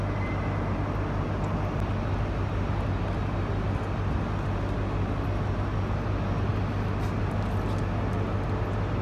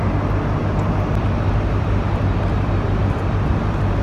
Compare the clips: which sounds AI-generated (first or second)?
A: second